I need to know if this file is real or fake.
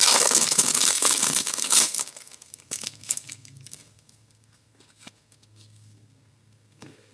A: fake